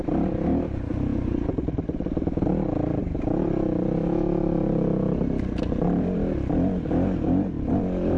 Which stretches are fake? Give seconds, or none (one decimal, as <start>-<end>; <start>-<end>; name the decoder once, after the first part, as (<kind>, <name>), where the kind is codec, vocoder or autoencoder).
none